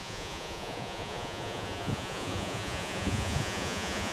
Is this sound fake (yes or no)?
yes